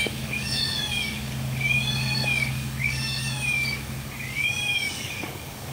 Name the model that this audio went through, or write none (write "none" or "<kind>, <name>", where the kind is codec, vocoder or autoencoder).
codec, DAC